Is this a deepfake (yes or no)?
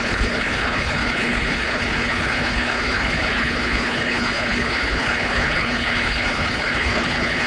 yes